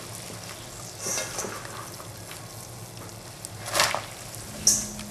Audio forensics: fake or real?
real